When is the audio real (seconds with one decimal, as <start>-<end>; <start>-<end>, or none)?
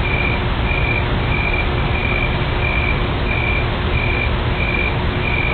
0.0-5.5